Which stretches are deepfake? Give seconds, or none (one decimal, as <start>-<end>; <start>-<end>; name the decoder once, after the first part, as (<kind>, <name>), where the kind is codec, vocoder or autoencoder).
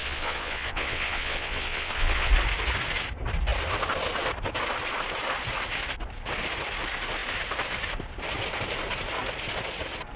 0.0-2.3 (vocoder, WaveNeXt)